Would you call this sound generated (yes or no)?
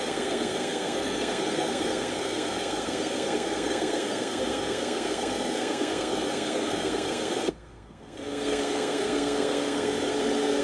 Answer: yes